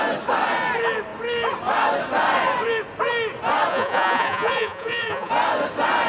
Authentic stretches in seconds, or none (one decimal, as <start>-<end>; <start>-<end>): 0.0-3.7; 5.3-6.1